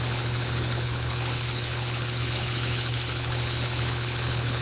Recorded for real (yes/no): no